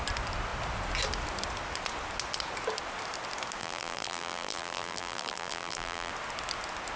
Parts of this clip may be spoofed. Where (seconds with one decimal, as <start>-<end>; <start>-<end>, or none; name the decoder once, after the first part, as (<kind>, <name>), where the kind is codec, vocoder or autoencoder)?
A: 3.6-6.1 (vocoder, BigVGAN v2)